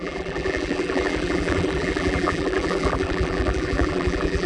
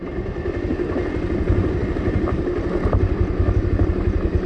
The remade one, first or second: first